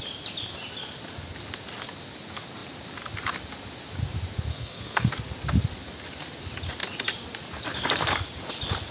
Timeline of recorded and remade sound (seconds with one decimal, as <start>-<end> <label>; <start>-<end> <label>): 0.0-4.5 recorded; 4.5-5.1 remade; 5.1-8.9 recorded